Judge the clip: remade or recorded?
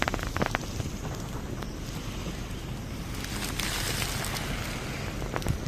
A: recorded